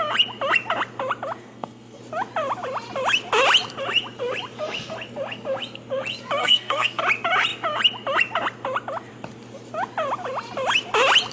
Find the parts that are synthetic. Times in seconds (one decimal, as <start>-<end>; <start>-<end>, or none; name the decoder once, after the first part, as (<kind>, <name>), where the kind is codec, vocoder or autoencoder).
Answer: 1.4-2.0 (codec, SNAC); 6.4-7.0